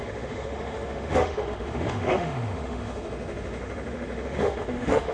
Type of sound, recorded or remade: remade